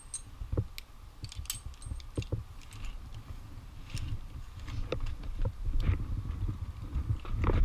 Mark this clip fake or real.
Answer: real